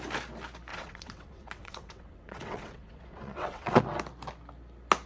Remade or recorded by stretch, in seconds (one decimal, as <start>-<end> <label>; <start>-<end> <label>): 0.0-0.7 recorded; 0.7-3.8 remade; 3.8-5.1 recorded